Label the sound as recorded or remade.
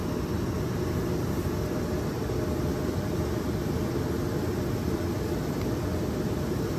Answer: recorded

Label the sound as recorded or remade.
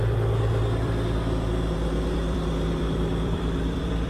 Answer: remade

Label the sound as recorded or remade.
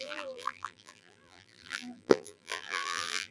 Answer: remade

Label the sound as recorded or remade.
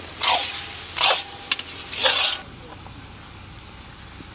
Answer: recorded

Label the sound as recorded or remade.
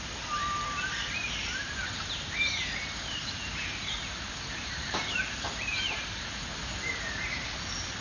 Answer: remade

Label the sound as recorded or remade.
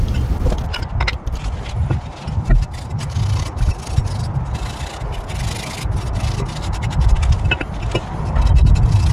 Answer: recorded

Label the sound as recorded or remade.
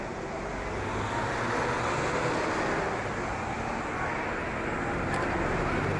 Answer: recorded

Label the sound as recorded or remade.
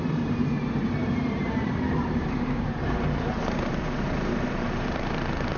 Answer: remade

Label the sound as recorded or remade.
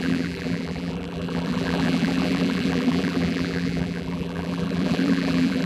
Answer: remade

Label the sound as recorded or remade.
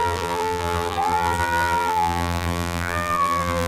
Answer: remade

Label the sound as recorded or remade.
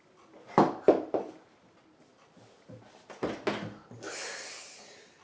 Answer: recorded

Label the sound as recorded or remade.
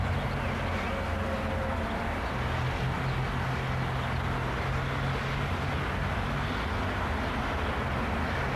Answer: recorded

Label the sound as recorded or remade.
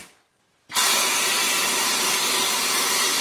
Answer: recorded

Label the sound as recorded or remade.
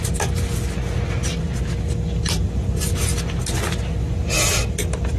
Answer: recorded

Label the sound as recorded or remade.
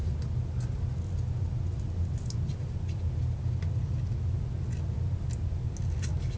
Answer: recorded